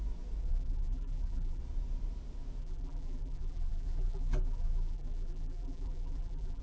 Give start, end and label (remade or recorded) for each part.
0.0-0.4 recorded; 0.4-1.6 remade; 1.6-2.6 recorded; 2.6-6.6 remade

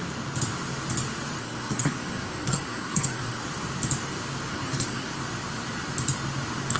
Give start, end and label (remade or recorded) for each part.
0.0-1.4 recorded; 1.4-3.4 remade; 3.4-4.5 recorded; 4.5-5.1 remade; 5.1-6.8 recorded

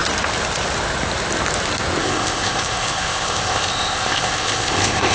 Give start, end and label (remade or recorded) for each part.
0.0-2.0 recorded; 2.0-5.1 remade

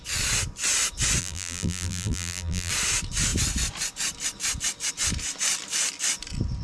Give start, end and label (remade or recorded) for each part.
0.0-1.2 recorded; 1.2-2.7 remade; 2.7-6.6 recorded

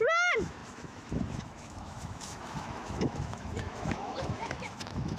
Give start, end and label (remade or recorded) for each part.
0.0-5.2 remade